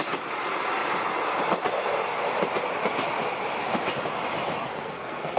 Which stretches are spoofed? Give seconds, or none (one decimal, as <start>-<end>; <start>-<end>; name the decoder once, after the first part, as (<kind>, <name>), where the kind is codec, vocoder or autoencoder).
4.6-5.4 (codec, SNAC)